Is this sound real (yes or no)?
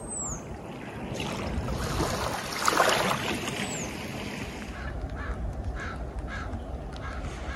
yes